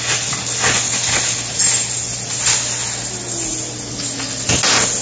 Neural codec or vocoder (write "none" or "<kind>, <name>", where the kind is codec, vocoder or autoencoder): none